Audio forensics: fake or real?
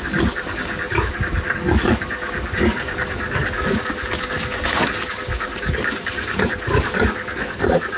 fake